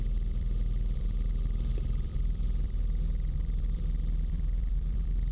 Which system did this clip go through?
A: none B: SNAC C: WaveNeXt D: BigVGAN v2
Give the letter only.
D